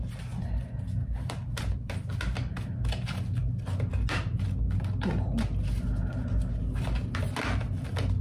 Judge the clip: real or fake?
real